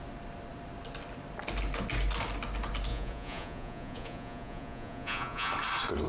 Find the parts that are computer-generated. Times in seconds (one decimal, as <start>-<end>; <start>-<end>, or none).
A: 2.9-5.5

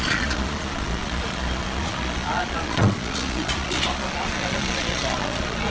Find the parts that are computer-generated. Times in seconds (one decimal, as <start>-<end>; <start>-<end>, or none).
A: 0.0-5.7

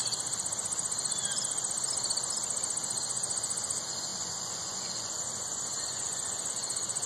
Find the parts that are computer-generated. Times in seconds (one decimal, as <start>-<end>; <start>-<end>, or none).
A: 3.0-7.1

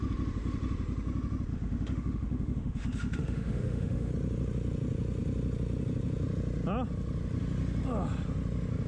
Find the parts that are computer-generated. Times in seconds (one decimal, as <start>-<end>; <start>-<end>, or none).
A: 1.5-4.1

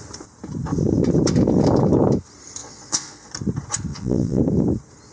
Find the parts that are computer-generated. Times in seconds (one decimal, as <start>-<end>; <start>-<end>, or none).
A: 2.6-3.3; 3.9-4.4